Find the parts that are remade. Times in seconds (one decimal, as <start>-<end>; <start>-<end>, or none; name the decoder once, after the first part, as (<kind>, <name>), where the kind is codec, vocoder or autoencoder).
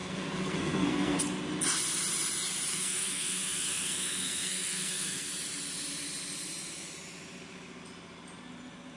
0.0-1.2 (codec, SNAC); 2.7-5.3